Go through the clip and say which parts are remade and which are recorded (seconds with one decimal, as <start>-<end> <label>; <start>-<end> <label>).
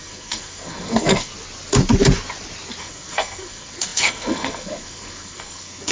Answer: 0.0-1.3 remade; 1.3-2.8 recorded; 2.8-5.9 remade